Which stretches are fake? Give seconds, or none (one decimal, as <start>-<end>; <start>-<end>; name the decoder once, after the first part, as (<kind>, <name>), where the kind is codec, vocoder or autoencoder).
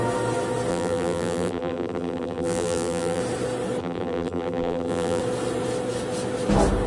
0.7-3.2 (vocoder, BigVGAN v2); 3.8-5.2